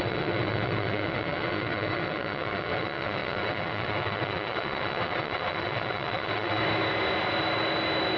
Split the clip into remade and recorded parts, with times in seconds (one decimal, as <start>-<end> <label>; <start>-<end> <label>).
0.0-6.6 remade; 6.6-8.2 recorded